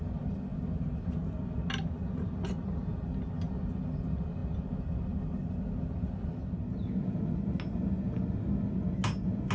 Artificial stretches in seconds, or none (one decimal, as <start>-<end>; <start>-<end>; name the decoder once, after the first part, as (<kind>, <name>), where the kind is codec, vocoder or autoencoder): none

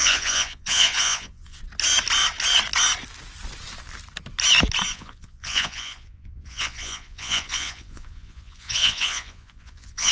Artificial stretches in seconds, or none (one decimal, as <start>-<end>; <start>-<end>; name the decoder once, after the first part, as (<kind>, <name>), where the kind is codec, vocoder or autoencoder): 0.0-1.6 (vocoder, Vocos); 4.9-10.1

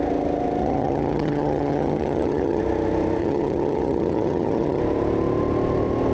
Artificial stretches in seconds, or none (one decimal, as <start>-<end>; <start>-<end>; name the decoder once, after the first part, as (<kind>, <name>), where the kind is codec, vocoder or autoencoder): 0.6-2.6 (vocoder, HiFi-GAN); 3.2-4.8

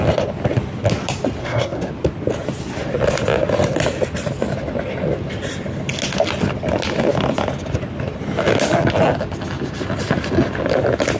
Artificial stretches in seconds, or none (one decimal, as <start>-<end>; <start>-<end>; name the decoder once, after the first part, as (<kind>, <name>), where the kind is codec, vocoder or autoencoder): 1.4-1.9 (codec, SNAC)